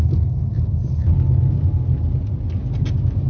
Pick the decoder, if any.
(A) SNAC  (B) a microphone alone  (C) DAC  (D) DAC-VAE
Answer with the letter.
B